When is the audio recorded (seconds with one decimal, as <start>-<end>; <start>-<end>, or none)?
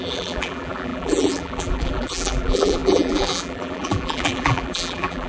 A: none